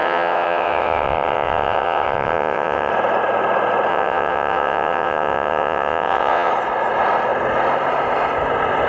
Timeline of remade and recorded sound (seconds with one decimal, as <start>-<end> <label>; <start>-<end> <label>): 0.0-2.9 remade; 2.9-3.9 recorded; 3.9-6.5 remade; 6.5-8.9 recorded